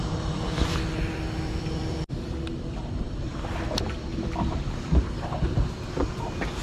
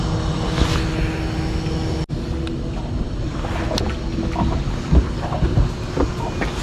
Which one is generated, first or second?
first